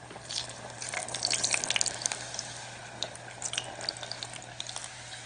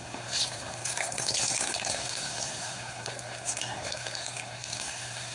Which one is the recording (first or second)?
first